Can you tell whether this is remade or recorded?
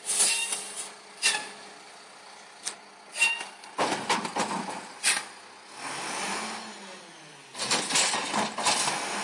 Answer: recorded